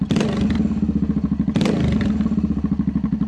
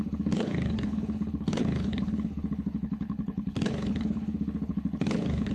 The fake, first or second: second